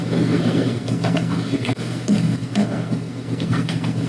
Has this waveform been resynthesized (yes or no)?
yes